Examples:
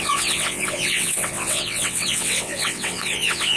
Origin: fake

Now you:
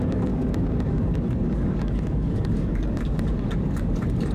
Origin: fake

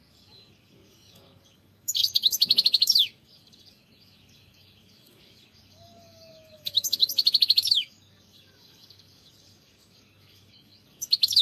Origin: fake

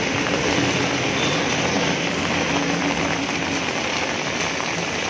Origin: real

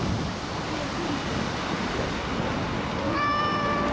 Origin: real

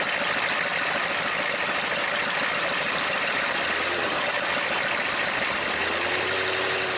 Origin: real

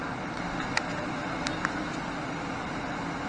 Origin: real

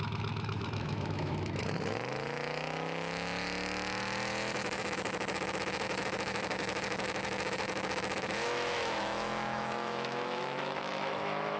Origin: fake